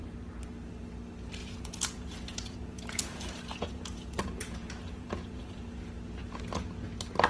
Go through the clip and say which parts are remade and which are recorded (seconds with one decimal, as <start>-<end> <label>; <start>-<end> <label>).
0.0-1.4 recorded; 1.4-5.8 remade; 5.8-7.3 recorded